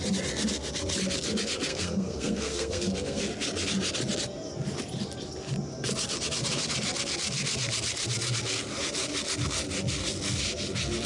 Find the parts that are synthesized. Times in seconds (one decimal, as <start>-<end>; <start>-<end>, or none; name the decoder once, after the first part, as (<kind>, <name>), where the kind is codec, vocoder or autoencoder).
1.7-3.2 (codec, SNAC)